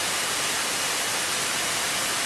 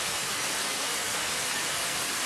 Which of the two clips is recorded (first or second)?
first